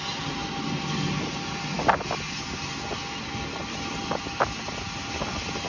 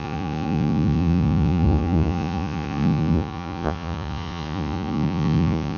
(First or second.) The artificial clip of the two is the second